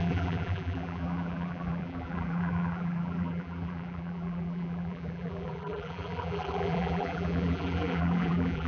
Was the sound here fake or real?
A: fake